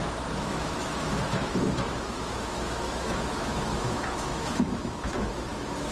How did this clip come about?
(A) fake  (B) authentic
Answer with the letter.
A